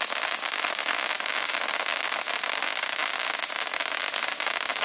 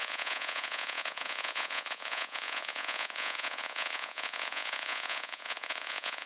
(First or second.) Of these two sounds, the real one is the first